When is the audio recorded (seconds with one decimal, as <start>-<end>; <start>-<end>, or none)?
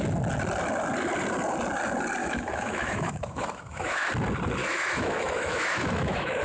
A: 0.0-2.2; 4.1-4.6